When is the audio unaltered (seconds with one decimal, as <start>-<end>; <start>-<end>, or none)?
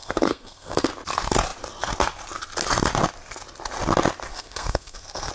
0.9-4.3